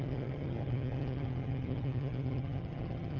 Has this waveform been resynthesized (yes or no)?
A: yes